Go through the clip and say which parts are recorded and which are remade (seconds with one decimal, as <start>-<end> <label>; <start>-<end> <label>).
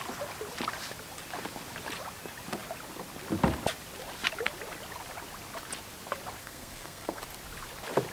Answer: 0.0-6.4 recorded; 6.4-7.2 remade; 7.2-8.1 recorded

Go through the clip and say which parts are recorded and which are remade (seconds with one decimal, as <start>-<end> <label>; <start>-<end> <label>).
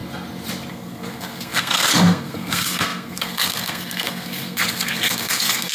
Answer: 0.0-0.7 recorded; 0.7-5.7 remade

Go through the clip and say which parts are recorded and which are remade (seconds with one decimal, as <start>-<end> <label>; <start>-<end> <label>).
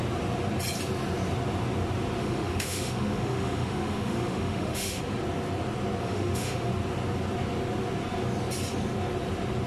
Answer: 0.0-2.2 recorded; 2.2-5.0 remade; 5.0-6.0 recorded; 6.0-6.7 remade; 6.7-9.7 recorded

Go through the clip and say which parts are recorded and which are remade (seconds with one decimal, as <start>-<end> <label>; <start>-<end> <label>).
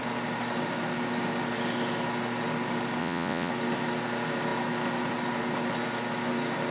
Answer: 0.0-3.0 recorded; 3.0-3.5 remade; 3.5-6.7 recorded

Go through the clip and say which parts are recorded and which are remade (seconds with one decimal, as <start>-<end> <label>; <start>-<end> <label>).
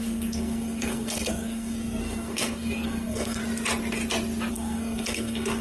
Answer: 0.0-3.4 remade; 3.4-4.5 recorded; 4.5-5.6 remade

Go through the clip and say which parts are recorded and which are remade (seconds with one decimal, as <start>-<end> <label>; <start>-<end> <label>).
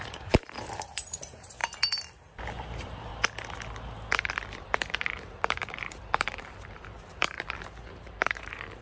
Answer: 0.0-1.6 remade; 1.6-2.4 recorded; 2.4-3.1 remade; 3.1-4.6 recorded; 4.6-8.8 remade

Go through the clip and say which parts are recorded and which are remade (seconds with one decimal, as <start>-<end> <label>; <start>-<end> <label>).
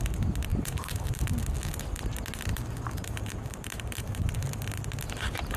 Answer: 0.0-0.5 recorded; 0.5-1.2 remade; 1.2-2.5 recorded; 2.5-4.3 remade; 4.3-5.6 recorded